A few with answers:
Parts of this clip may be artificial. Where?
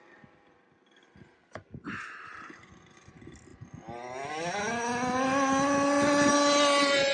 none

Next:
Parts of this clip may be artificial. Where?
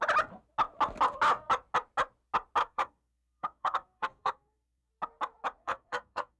2.6-4.9 (codec, SNAC); 5.6-6.4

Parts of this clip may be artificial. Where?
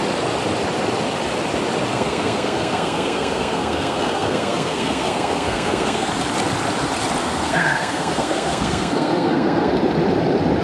1.9-6.1 (codec, SNAC); 7.2-9.7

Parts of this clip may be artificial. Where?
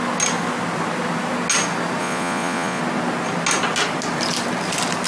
2.0-2.8 (vocoder, Vocos)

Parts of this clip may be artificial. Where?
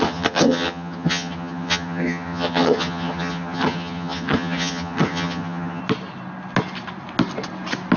0.0-5.8 (vocoder, HiFi-GAN)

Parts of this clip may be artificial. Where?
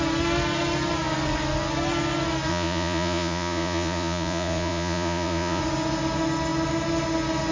2.5-5.6 (vocoder, Vocos)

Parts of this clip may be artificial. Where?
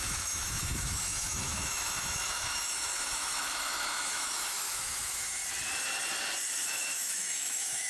0.0-5.4 (autoencoder, DAC-VAE); 6.7-7.9